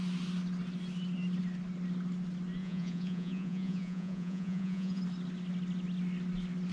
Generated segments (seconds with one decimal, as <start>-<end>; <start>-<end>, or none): 2.6-5.0